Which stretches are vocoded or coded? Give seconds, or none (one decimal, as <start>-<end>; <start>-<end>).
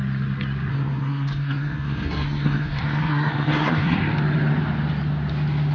0.7-4.0